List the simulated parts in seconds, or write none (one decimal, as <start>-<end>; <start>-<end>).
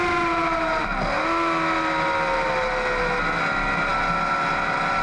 none